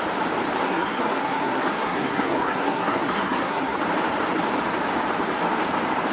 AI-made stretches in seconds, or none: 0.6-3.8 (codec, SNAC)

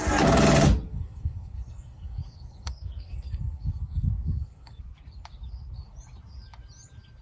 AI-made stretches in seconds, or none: 0.9-4.8 (codec, SNAC)

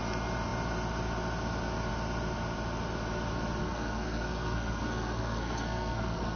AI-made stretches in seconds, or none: 3.6-6.4 (codec, SNAC)

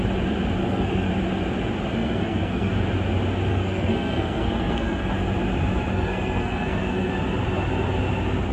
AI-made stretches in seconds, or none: 0.6-1.1 (codec, SNAC); 2.0-2.7; 3.5-5.1; 5.9-7.1

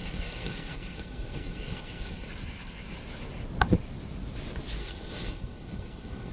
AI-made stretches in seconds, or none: 0.0-2.3 (codec, SNAC); 4.8-6.3